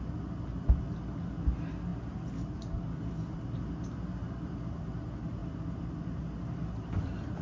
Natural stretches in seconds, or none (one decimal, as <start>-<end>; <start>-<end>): 0.0-7.4